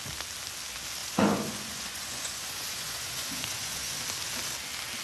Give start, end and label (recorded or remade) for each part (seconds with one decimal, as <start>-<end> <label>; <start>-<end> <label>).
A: 0.0-1.0 recorded; 1.0-4.0 remade; 4.0-5.0 recorded